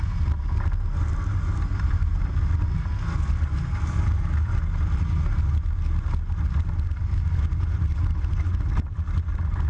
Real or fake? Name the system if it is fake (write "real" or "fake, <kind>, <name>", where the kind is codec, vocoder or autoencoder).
real